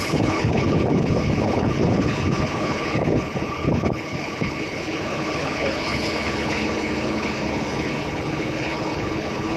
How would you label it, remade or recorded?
remade